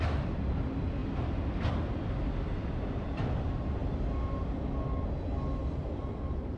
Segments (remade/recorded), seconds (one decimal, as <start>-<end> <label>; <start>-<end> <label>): 0.0-6.6 recorded